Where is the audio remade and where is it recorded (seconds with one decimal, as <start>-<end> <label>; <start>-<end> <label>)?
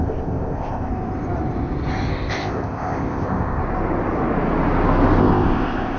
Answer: 0.0-0.9 remade; 0.9-2.1 recorded; 2.1-3.6 remade; 3.6-5.2 recorded; 5.2-6.0 remade